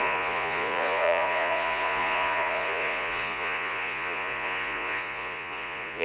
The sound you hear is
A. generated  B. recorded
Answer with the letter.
A